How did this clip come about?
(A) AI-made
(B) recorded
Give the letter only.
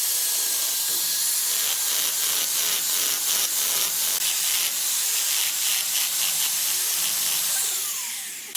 B